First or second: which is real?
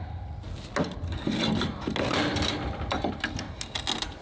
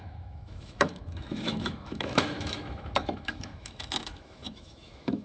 first